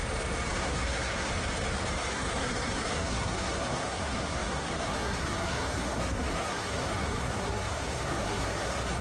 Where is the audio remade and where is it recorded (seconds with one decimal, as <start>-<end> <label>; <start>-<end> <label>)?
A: 0.0-0.5 recorded; 0.5-1.3 remade; 1.3-2.1 recorded; 2.1-9.0 remade